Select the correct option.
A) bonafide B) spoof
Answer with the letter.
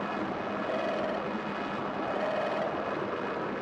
A